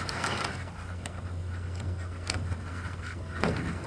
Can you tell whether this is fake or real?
fake